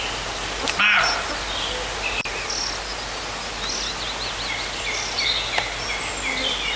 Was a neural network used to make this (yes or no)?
no